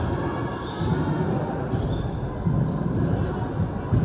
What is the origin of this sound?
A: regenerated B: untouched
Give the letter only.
B